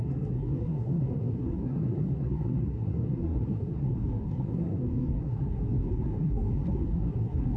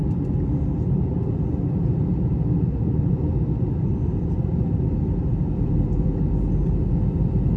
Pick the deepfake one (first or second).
first